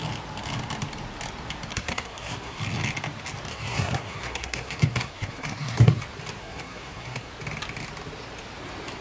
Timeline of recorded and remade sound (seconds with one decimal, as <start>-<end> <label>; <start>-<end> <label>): 0.0-1.7 recorded; 1.7-2.6 remade; 2.6-3.5 recorded; 3.5-6.0 remade; 6.0-6.4 recorded; 6.4-7.3 remade; 7.3-9.0 recorded